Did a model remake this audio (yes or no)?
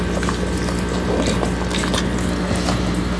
no